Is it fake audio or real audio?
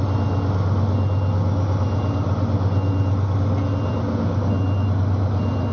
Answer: real